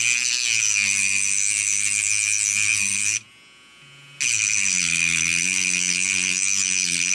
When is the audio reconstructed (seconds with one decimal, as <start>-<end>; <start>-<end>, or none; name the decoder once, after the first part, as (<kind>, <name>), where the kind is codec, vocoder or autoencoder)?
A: none